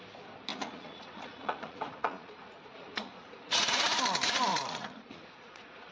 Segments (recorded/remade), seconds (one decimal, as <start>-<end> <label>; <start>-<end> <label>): 0.0-0.5 recorded; 0.5-4.0 remade; 4.0-4.5 recorded; 4.5-5.9 remade